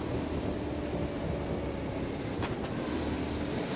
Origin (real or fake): real